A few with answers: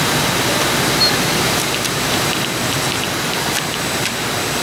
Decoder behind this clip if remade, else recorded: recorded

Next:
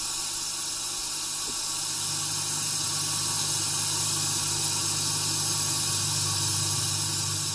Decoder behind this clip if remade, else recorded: recorded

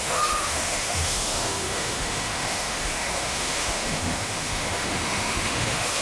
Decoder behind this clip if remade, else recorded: remade, autoencoder, DAC-VAE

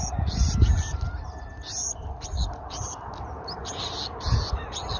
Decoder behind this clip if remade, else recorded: recorded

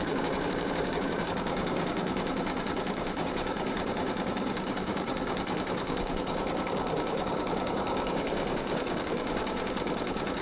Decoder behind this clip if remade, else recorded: remade, codec, DAC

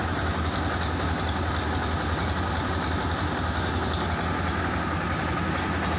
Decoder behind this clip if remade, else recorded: recorded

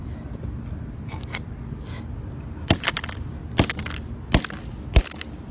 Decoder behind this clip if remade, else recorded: recorded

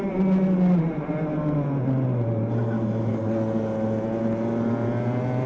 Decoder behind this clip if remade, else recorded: recorded